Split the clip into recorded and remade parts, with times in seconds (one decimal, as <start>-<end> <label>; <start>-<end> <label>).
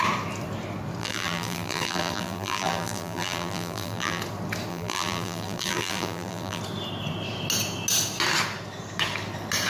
0.0-1.0 recorded; 1.0-4.2 remade; 4.2-4.7 recorded; 4.7-6.6 remade; 6.6-9.7 recorded